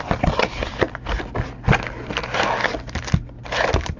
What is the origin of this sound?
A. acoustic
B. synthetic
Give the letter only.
A